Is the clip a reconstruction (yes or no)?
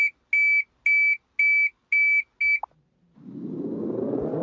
no